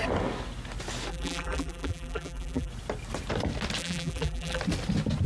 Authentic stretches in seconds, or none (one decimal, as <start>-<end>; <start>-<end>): 0.0-1.1; 2.7-3.8; 4.6-5.3